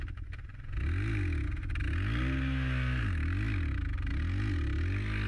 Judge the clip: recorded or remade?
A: recorded